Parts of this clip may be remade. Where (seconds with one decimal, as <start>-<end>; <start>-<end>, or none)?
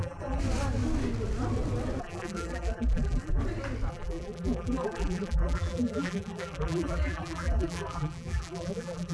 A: 0.0-0.4; 2.0-3.4; 3.9-9.1